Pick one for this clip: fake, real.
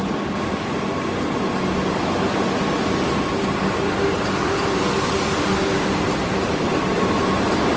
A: real